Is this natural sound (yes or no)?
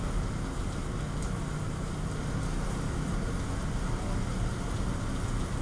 yes